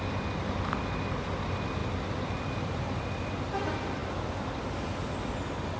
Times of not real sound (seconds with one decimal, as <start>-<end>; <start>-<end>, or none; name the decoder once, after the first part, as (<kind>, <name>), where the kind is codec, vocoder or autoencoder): none